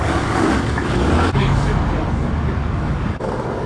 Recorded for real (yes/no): no